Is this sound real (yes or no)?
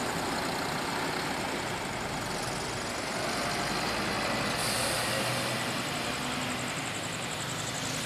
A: yes